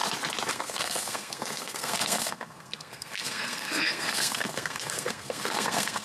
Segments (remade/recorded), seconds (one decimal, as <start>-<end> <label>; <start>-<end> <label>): 0.0-0.5 recorded; 0.5-6.0 remade